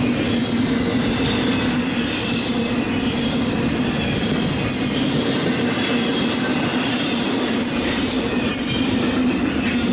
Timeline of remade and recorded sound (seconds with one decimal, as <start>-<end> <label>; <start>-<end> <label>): 0.0-6.7 recorded; 6.7-8.6 remade; 8.6-9.9 recorded